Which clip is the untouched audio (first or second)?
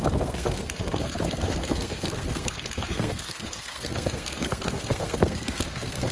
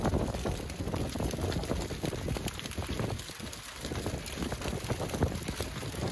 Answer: second